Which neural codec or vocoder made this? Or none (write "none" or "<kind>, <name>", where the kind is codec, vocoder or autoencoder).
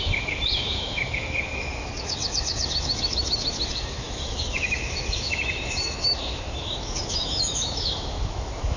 autoencoder, DAC-VAE